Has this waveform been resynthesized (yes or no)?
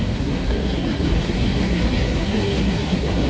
yes